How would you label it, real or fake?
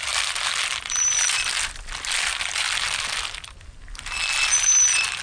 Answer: real